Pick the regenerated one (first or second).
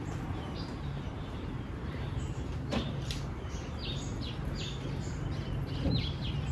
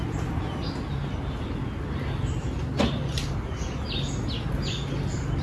first